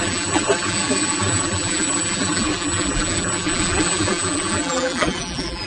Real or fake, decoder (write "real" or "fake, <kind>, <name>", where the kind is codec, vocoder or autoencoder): fake, vocoder, BigVGAN v2